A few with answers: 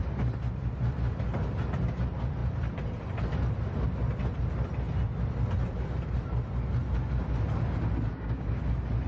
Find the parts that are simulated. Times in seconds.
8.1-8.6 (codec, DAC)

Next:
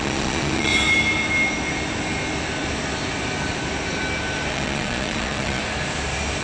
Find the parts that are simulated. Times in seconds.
0.0-0.7 (vocoder, Vocos); 4.5-5.6

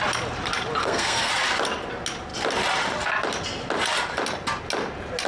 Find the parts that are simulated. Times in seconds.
0.8-1.3 (codec, SNAC)

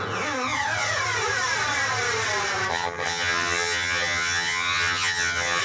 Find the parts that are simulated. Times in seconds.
2.7-5.6 (vocoder, HiFi-GAN)

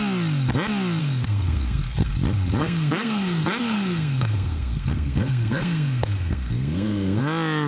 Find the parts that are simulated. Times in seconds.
1.0-2.1 (codec, SNAC); 2.6-7.2

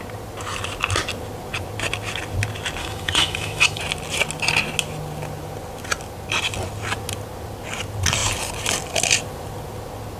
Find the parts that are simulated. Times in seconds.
2.8-3.8 (autoencoder, DAC-VAE)

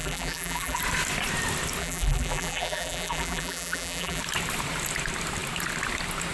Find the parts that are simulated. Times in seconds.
0.0-0.8 (vocoder, BigVGAN v2); 1.8-4.2